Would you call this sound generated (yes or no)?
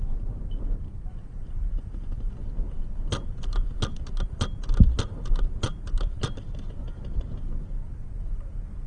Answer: no